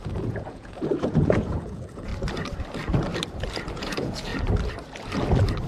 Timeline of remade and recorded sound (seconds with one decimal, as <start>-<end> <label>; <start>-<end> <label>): 0.0-2.1 remade; 2.1-3.7 recorded; 3.7-4.3 remade; 4.3-5.7 recorded